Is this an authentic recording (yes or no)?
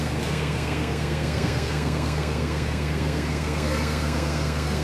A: no